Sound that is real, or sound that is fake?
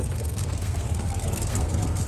fake